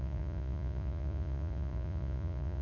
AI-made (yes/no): yes